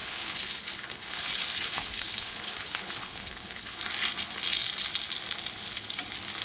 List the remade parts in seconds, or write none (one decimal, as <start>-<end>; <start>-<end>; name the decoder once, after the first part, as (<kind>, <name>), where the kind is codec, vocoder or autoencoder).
0.0-3.8 (codec, HILCodec)